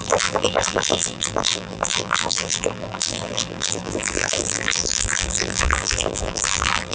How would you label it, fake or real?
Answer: fake